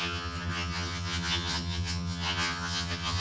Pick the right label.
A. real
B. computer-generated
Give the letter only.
B